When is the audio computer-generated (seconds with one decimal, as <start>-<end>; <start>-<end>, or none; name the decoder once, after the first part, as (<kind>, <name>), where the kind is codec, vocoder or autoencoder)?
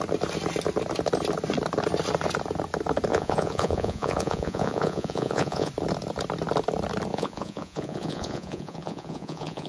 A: 3.1-5.7 (vocoder, Vocos); 7.1-9.7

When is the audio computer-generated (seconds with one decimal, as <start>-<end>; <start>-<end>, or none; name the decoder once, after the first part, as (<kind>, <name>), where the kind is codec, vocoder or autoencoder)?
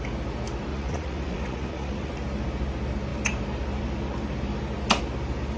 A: 0.7-2.1 (vocoder, Vocos)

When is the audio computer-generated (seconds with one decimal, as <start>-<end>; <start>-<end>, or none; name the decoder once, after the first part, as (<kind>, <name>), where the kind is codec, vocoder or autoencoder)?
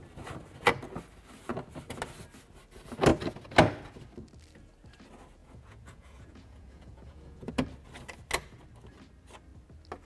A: 5.4-7.5 (vocoder, Vocos)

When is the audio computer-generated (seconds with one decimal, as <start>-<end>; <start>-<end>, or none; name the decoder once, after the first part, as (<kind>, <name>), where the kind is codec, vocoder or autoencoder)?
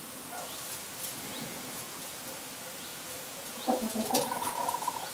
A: 1.3-2.1 (vocoder, Vocos); 2.9-5.1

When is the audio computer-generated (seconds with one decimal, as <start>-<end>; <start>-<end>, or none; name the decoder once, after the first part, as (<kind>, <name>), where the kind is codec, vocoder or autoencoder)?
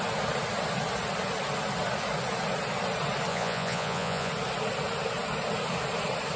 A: 3.3-4.3 (vocoder, Vocos)